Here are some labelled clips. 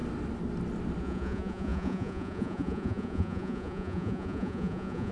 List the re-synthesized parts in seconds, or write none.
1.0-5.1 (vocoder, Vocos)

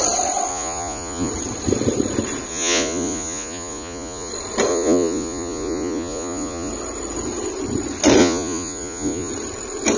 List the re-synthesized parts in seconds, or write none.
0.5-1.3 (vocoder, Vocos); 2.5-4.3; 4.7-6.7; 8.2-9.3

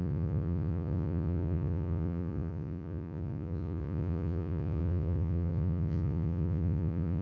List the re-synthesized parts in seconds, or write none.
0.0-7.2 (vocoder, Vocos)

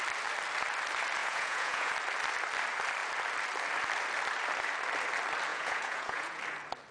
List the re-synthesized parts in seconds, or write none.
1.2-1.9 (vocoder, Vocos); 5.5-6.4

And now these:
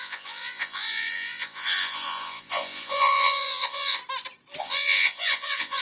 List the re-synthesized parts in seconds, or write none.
0.0-4.0 (vocoder, Vocos); 4.6-5.8

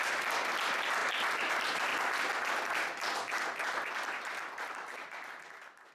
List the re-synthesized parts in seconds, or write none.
none

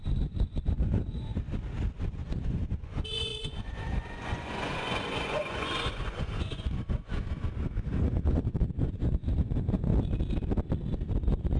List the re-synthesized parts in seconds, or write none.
0.0-1.3 (vocoder, Vocos); 2.1-9.9; 11.2-11.6

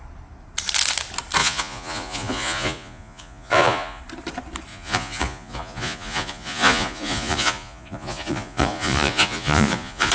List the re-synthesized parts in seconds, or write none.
1.4-4.0 (vocoder, Vocos); 4.7-10.1